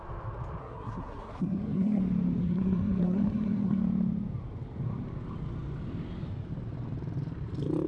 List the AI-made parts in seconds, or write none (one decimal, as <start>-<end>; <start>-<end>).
0.6-2.0; 2.4-3.8